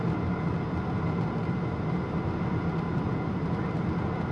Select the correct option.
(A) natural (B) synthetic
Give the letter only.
A